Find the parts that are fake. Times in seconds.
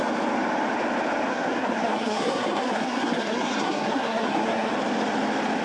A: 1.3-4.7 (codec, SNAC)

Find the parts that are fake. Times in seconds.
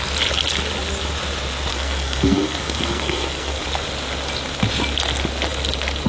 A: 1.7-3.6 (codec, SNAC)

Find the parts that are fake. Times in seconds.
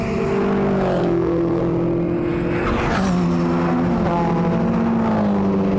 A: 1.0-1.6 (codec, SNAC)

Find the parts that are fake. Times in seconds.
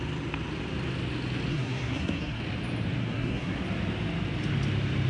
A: 1.5-2.4 (codec, SNAC); 3.0-3.6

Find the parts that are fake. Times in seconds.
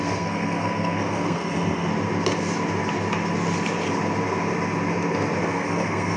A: 0.0-1.9 (codec, SNAC); 5.4-6.2